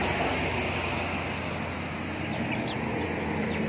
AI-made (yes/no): no